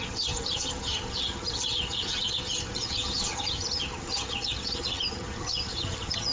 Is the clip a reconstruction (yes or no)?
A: yes